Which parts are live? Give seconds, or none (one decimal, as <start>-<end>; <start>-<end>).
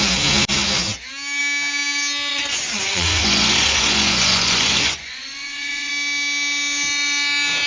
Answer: 0.0-2.3; 5.9-7.7